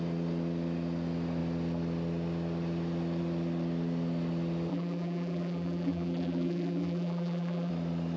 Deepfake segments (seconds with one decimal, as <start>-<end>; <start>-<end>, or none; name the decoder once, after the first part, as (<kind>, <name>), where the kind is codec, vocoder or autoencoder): 4.7-7.7 (vocoder, BigVGAN v2)